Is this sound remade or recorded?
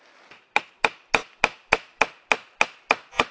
recorded